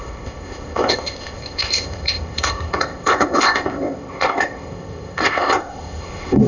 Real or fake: fake